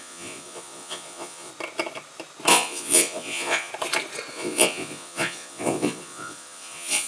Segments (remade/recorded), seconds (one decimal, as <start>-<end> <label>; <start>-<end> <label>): 0.0-1.5 remade; 1.5-2.5 recorded; 2.5-3.7 remade; 3.7-4.3 recorded; 4.3-7.1 remade